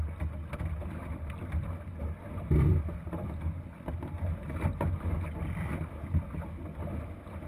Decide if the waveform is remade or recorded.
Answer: recorded